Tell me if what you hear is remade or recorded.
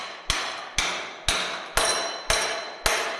recorded